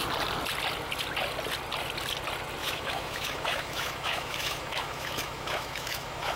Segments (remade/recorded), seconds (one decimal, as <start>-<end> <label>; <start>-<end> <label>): 0.0-2.6 recorded; 2.6-6.4 remade